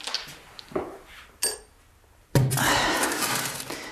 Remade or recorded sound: recorded